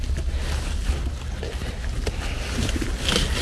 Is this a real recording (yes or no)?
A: yes